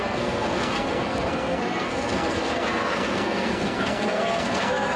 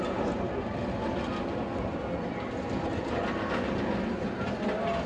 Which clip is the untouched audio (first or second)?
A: second